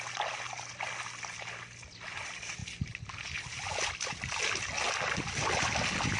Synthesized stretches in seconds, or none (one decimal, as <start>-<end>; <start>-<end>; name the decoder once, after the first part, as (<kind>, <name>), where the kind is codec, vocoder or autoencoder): none